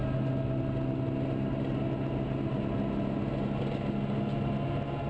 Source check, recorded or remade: recorded